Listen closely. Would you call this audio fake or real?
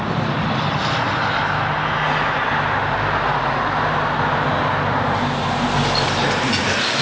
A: real